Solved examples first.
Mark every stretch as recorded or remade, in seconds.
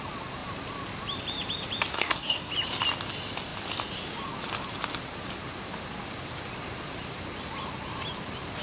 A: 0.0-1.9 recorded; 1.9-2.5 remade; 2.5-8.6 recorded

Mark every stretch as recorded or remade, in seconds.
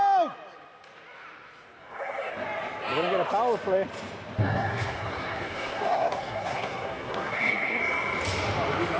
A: 0.0-1.8 recorded; 1.8-2.3 remade; 2.3-4.4 recorded; 4.4-7.8 remade; 7.8-9.0 recorded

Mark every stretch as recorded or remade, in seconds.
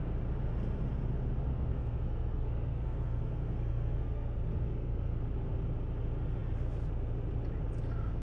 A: 0.0-1.5 recorded; 1.5-5.2 remade; 5.2-8.2 recorded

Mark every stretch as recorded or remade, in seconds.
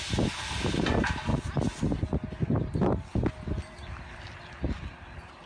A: 0.0-5.5 recorded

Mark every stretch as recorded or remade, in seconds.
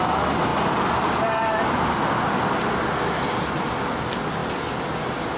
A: 0.0-5.4 recorded